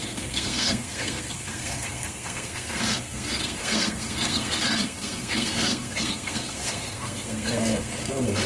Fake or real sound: fake